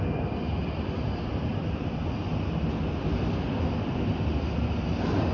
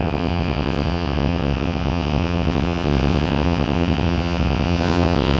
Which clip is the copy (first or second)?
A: second